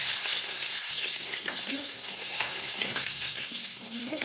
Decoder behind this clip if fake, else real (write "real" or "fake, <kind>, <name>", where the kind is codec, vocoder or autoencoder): fake, codec, SNAC